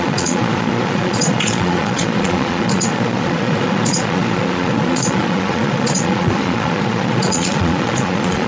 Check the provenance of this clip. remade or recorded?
remade